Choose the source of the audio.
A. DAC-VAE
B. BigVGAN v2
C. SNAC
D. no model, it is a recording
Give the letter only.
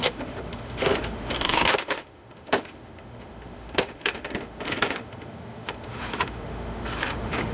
A